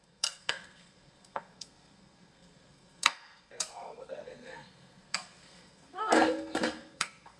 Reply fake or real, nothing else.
fake